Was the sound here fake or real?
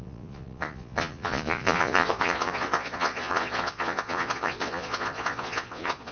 fake